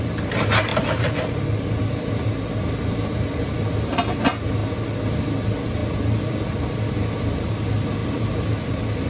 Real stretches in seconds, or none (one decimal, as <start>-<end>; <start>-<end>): 0.0-0.7; 1.4-8.0; 8.7-9.1